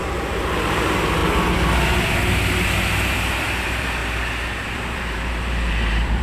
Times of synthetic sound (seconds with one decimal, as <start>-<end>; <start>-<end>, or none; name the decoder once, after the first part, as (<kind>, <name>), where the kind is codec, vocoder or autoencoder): 0.0-1.2 (vocoder, BigVGAN v2); 3.1-4.0; 4.6-6.2